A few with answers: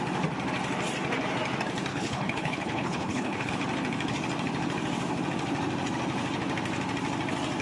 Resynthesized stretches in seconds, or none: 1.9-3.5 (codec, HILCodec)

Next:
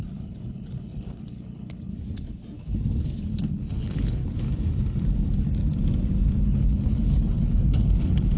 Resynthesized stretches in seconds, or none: 0.0-1.9 (codec, HILCodec); 3.3-4.2; 6.4-8.4

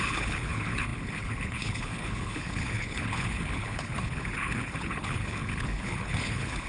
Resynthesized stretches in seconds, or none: 0.0-6.7 (codec, HILCodec)

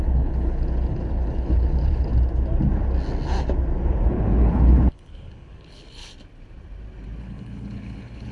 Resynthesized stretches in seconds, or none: 0.0-2.1 (codec, HILCodec); 4.1-6.1; 7.2-8.3

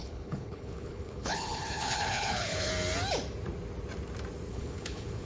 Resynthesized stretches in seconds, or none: 0.0-2.7 (codec, HILCodec); 4.5-5.2

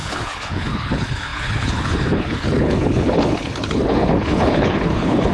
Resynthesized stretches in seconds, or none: 0.0-5.3 (codec, HILCodec)

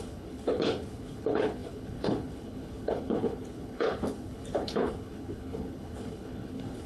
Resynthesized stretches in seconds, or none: 0.0-6.9 (codec, HILCodec)

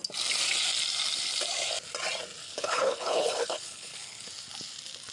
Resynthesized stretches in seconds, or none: 2.4-4.3 (codec, HILCodec)